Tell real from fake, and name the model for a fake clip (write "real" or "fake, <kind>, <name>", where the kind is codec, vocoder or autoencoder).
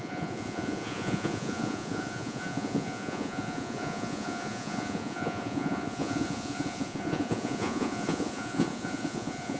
fake, vocoder, Vocos